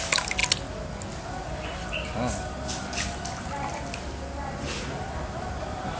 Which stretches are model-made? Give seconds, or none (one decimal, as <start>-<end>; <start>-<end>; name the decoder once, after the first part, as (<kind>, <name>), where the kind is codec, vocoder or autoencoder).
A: none